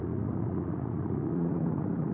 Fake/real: fake